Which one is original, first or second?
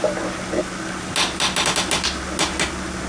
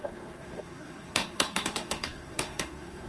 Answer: first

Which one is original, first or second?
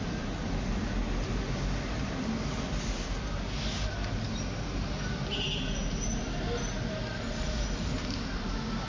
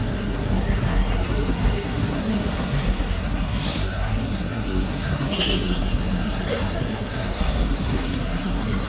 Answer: first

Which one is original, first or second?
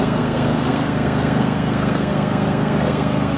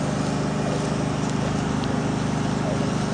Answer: second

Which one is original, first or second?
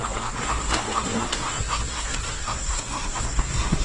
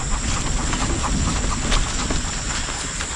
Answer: second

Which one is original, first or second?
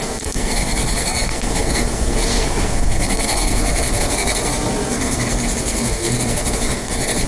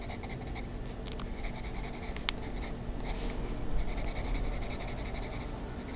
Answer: second